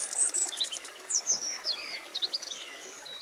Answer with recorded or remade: remade